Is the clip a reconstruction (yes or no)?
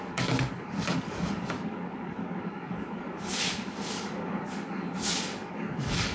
yes